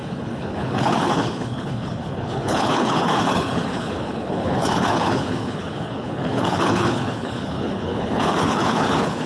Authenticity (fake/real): fake